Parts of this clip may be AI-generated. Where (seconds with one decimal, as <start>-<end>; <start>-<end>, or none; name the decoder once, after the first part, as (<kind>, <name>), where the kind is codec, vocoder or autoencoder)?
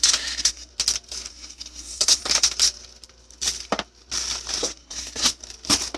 0.0-0.7 (codec, SNAC); 1.3-2.2; 4.6-5.4